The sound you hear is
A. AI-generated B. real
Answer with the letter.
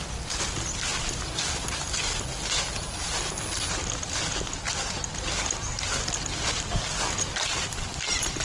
B